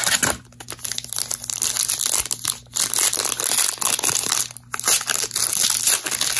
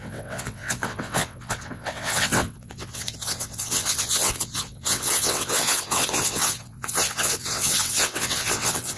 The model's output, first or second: second